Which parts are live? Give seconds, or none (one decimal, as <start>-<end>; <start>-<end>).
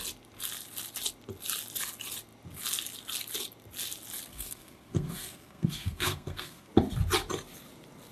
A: 0.0-4.3; 6.7-8.1